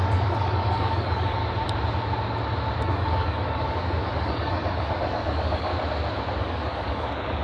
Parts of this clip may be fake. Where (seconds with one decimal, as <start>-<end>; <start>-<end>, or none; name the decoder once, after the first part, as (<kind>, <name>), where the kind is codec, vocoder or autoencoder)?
0.0-1.4 (codec, DAC); 2.8-5.7; 6.4-7.4

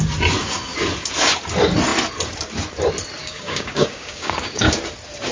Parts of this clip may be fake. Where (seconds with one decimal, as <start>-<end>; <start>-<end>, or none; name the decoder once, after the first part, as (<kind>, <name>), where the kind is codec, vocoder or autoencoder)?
3.2-4.7 (codec, DAC)

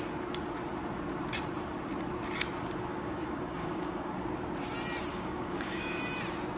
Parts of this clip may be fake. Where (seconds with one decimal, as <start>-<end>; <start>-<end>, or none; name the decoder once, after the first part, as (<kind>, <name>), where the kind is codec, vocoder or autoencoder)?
2.9-4.2 (codec, DAC); 5.1-6.0

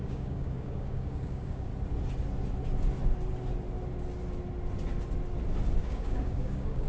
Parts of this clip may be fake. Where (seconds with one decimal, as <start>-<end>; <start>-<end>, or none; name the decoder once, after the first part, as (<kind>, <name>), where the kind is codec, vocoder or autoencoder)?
0.0-1.7 (codec, DAC); 5.8-6.9